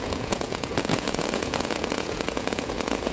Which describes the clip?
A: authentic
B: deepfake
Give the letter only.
B